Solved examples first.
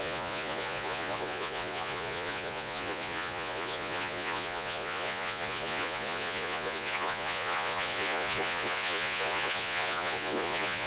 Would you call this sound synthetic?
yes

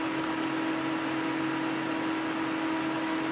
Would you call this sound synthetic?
no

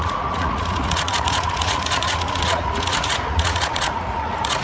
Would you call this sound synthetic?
yes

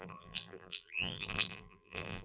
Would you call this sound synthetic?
yes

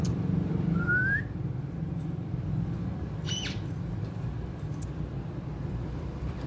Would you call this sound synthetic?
yes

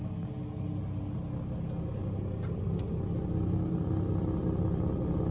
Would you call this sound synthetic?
no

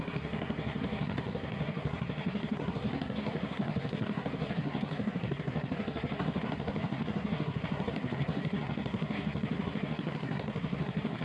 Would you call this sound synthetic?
yes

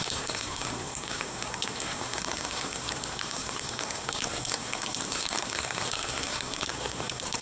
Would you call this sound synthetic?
yes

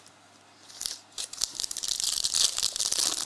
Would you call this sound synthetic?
no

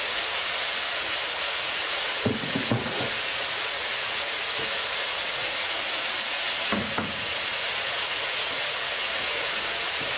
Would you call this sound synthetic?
yes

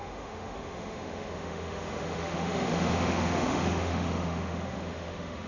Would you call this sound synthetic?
yes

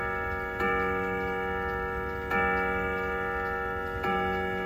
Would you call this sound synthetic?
no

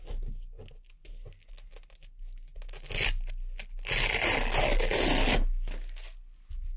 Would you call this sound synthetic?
no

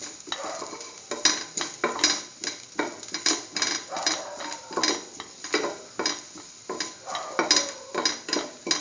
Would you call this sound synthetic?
no